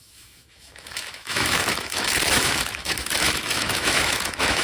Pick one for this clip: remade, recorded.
remade